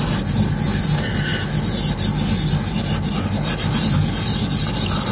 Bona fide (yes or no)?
yes